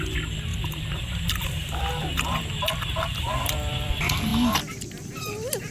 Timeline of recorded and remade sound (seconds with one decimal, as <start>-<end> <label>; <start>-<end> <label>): 0.0-0.5 recorded; 0.5-3.9 remade; 3.9-5.7 recorded